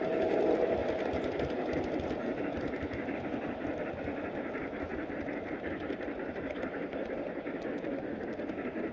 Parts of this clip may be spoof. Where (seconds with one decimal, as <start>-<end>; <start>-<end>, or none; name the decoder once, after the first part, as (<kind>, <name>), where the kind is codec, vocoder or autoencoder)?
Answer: 4.9-7.0 (vocoder, BigVGAN v2)